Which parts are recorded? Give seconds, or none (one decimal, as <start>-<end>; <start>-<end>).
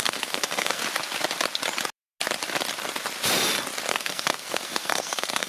0.8-3.9